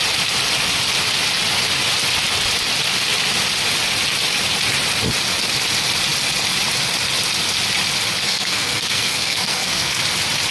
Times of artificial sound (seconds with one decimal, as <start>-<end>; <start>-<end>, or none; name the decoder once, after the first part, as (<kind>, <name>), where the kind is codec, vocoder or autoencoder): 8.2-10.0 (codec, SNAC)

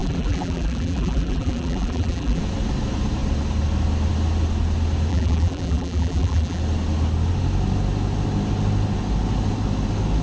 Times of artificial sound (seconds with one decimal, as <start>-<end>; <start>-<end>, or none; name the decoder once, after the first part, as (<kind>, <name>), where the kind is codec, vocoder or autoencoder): 0.0-2.4 (vocoder, BigVGAN v2); 5.1-6.6

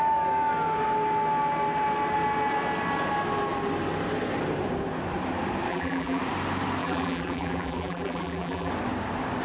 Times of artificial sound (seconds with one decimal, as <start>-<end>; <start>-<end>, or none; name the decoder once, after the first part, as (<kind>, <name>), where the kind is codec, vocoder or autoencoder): 5.7-6.2 (vocoder, BigVGAN v2); 6.8-8.7

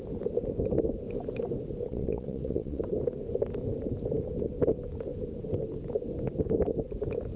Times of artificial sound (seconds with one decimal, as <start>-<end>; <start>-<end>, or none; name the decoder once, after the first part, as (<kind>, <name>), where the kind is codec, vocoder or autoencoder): 1.9-2.8 (vocoder, WaveNeXt)